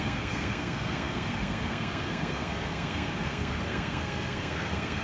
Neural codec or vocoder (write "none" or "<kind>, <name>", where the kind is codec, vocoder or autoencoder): codec, SNAC